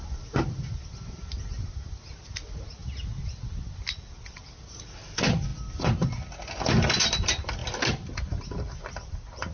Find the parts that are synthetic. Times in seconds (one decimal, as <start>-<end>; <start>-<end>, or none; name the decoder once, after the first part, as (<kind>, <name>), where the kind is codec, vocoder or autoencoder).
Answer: none